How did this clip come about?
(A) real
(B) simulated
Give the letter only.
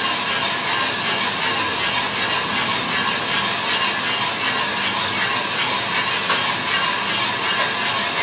A